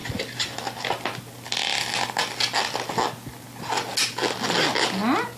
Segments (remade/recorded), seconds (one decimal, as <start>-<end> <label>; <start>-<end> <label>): 0.0-5.4 recorded